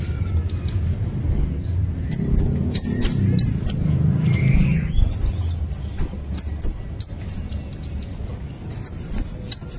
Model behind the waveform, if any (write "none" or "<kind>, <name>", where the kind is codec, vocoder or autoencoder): none